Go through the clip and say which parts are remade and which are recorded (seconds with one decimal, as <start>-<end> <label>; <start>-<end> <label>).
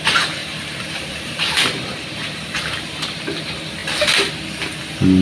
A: 0.0-0.4 recorded; 0.4-3.2 remade; 3.2-5.2 recorded